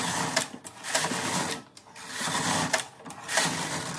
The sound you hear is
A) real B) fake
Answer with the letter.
A